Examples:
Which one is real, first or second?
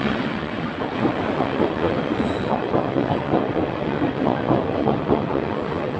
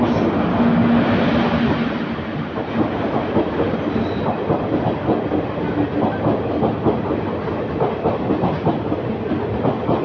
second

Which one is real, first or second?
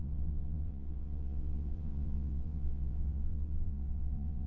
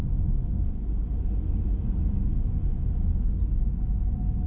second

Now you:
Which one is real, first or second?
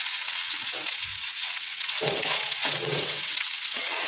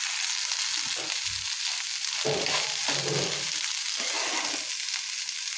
second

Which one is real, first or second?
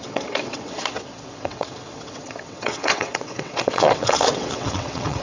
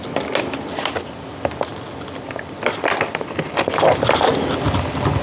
second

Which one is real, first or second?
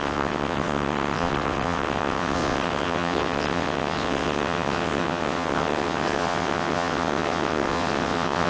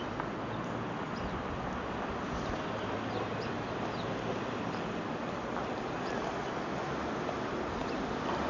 second